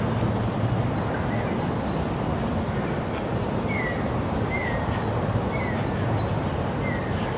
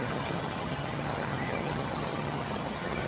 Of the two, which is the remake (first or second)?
second